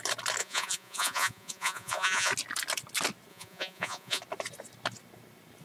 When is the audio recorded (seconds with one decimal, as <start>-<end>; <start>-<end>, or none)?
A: 0.0-0.4; 2.3-3.3; 4.2-5.6